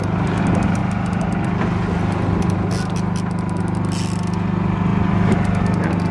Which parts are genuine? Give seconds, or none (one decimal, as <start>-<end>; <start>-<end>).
0.0-6.1